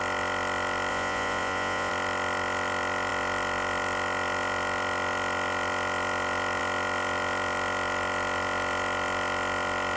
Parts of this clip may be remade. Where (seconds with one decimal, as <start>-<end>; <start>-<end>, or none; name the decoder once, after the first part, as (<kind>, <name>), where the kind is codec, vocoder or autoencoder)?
0.9-1.9 (vocoder, Vocos)